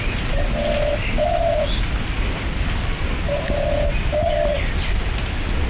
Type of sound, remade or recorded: recorded